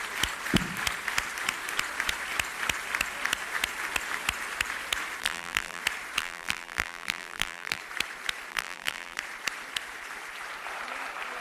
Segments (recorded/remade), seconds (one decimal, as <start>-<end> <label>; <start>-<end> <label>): 0.0-5.2 recorded; 5.2-5.8 remade; 5.8-6.2 recorded; 6.2-7.8 remade; 7.8-8.5 recorded; 8.5-9.2 remade; 9.2-11.4 recorded